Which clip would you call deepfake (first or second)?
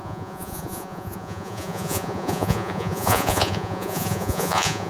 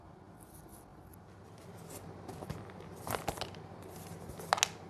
first